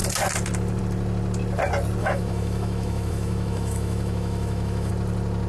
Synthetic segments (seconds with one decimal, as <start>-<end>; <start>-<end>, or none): 2.0-4.9